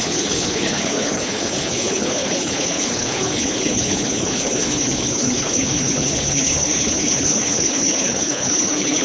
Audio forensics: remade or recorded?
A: remade